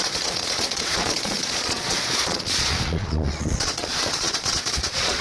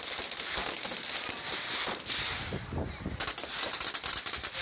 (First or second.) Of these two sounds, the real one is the second